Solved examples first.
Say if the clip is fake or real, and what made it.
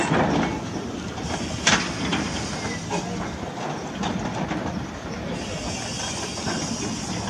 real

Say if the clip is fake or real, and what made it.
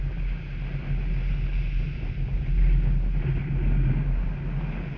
real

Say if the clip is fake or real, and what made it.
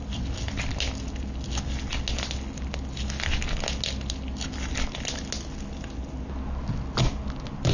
real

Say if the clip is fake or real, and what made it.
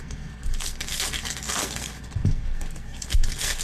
fake, codec, SNAC